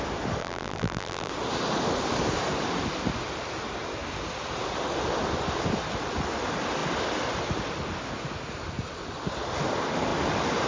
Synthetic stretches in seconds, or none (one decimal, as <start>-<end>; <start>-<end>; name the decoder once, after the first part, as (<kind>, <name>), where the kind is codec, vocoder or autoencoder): 0.4-1.3 (vocoder, BigVGAN v2)